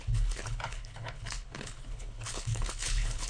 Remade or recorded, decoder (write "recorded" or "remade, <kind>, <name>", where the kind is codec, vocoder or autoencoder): remade, codec, HILCodec